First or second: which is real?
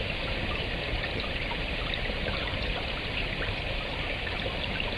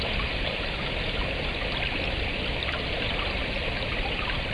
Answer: second